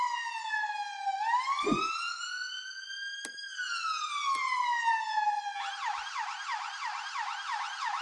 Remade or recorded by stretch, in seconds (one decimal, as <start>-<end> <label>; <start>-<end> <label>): 0.0-8.0 recorded